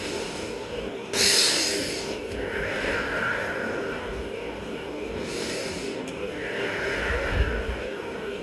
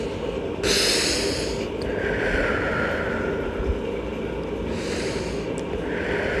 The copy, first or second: first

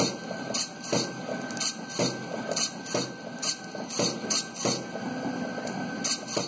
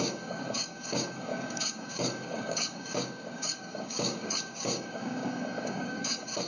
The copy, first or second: second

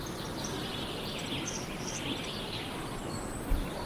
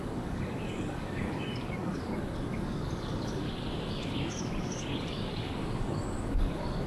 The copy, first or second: second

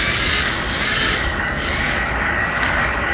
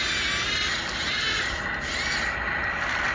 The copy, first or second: first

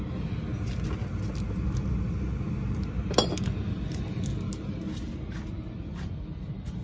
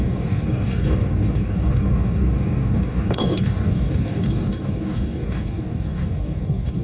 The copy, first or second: second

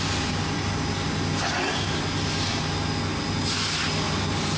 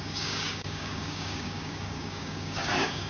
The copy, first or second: second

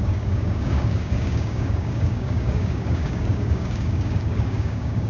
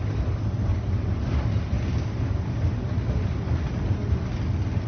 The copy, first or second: first